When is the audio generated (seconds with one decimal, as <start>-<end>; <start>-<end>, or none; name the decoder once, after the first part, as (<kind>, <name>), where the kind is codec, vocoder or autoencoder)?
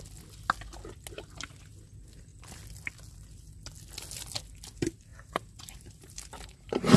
5.1-6.3 (vocoder, BigVGAN v2)